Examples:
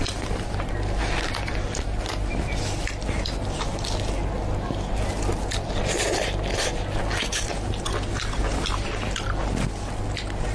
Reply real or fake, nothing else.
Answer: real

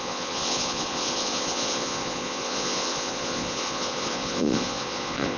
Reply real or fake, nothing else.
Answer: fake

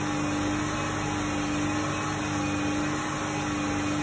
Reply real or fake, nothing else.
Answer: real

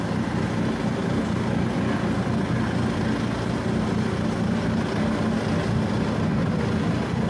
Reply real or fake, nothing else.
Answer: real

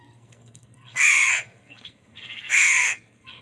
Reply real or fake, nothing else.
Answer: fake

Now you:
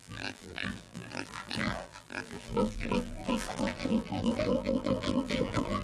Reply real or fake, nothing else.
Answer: fake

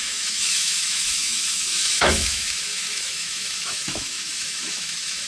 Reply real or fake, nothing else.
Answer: fake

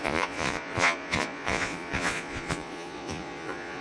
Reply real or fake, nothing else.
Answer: fake